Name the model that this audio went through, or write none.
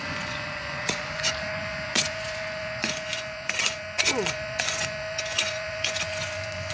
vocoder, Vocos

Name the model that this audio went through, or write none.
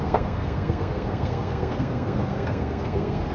codec, SNAC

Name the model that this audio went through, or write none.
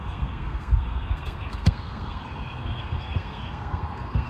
codec, SNAC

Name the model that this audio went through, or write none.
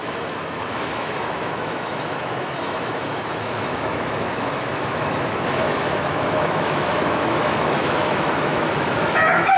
autoencoder, DAC-VAE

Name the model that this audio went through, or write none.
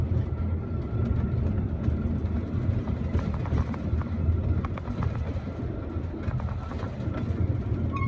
none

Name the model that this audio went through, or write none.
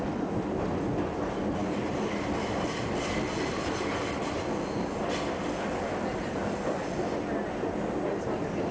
none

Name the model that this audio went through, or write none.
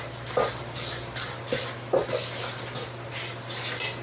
none